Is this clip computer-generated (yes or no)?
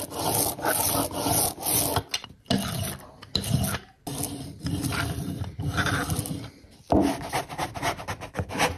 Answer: no